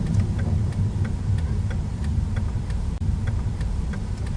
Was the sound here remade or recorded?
remade